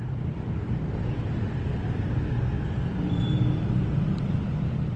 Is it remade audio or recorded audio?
recorded